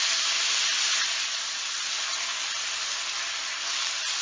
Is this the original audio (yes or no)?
yes